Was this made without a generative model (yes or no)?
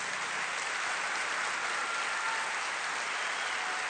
yes